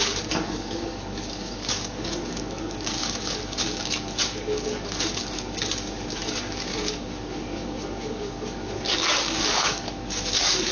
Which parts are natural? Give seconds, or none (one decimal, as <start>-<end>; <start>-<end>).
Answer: none